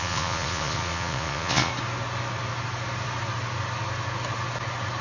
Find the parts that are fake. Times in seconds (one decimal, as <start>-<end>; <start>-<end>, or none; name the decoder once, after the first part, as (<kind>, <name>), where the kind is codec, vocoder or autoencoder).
0.0-1.7 (vocoder, Vocos)